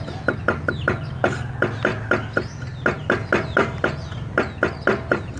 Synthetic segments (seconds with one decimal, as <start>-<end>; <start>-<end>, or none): none